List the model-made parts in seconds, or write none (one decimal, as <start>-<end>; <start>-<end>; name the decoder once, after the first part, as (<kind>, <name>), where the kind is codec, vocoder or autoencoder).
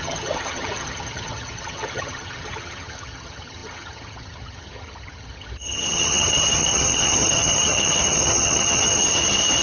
0.0-9.6 (vocoder, HiFi-GAN)